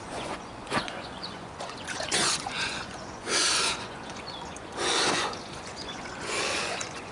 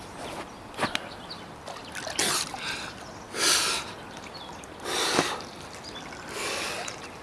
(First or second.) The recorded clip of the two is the second